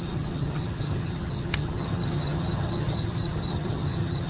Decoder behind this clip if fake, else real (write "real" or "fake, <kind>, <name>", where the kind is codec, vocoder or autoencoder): fake, vocoder, HiFi-GAN